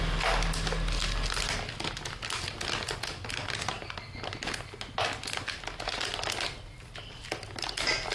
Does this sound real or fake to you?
real